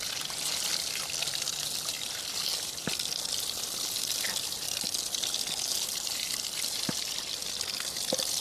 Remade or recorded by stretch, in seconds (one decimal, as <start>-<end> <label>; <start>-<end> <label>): 0.0-8.4 recorded